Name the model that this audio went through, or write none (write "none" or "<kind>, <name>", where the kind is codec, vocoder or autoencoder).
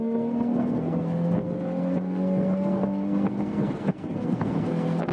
codec, SNAC